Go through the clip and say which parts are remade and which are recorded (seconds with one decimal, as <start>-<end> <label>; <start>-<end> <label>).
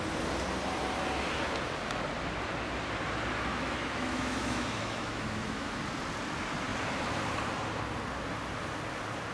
0.0-3.5 recorded; 3.5-5.8 remade; 5.8-9.3 recorded